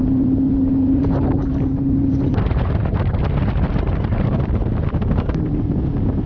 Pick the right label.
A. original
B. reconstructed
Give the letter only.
B